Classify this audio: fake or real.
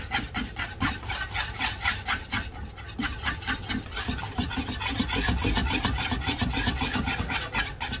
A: fake